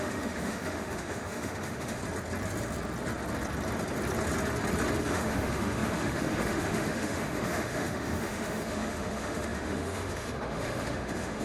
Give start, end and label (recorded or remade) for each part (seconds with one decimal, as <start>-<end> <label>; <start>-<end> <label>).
0.0-2.0 remade; 2.0-5.0 recorded; 5.0-11.4 remade